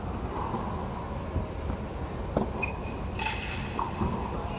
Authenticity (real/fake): real